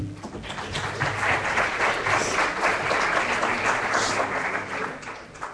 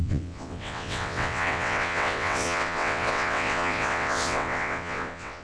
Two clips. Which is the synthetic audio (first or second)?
second